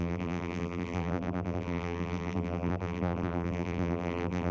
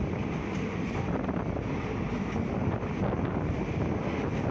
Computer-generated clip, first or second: first